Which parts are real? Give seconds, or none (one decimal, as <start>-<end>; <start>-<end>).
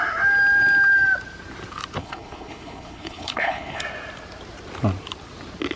0.0-2.0; 3.8-5.8